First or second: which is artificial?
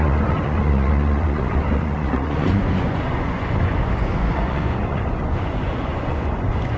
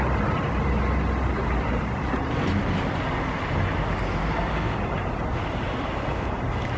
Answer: first